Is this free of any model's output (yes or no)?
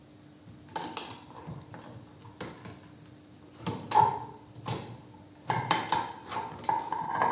yes